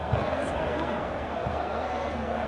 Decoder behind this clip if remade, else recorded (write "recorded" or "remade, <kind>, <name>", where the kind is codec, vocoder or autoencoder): remade, codec, SNAC